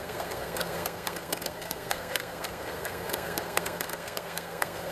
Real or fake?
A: fake